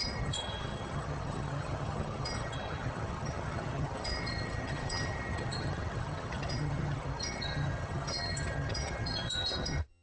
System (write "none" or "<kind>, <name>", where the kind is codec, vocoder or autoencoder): vocoder, HiFi-GAN